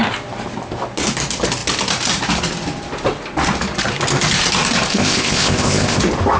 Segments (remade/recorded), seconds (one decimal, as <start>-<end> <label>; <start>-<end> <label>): 0.0-4.9 recorded; 4.9-6.0 remade; 6.0-6.4 recorded